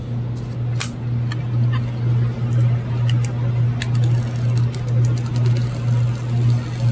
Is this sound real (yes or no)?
yes